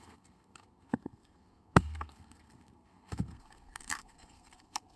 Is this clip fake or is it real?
fake